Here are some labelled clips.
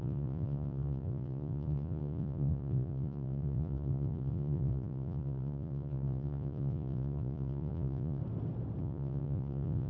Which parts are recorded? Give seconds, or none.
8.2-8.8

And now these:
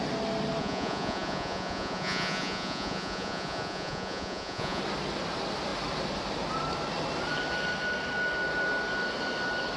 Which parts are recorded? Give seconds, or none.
0.0-0.6; 4.8-9.8

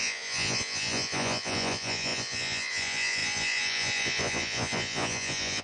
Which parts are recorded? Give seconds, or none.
none

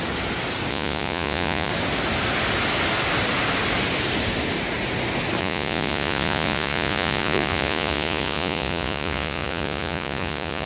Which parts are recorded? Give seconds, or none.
0.0-0.7; 1.7-5.4

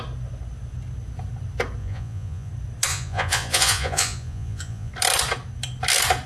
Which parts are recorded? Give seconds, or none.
0.0-1.8; 2.5-2.9; 4.9-6.3

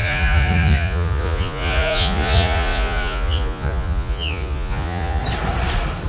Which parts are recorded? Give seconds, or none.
5.2-6.1